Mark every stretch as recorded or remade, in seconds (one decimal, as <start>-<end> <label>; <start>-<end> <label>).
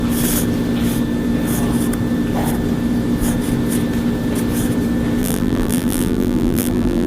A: 0.0-5.2 recorded; 5.2-7.1 remade